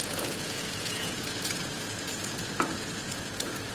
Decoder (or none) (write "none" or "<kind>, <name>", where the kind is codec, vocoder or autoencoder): vocoder, Vocos